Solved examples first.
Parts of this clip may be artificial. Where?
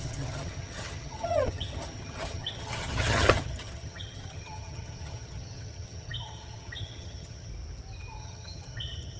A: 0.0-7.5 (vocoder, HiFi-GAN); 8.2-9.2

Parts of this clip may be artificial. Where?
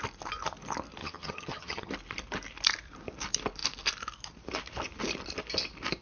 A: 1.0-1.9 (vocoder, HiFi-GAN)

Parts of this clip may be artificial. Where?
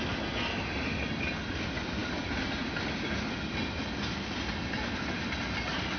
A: none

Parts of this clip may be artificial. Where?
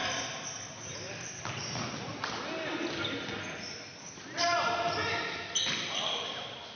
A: none